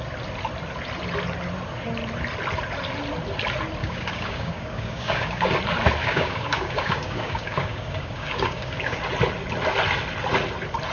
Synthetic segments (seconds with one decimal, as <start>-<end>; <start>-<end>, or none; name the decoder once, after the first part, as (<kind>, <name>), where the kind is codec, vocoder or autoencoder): 3.8-5.5 (codec, DAC); 6.0-9.0